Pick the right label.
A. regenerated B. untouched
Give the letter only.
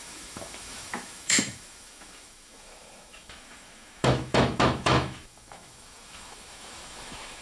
A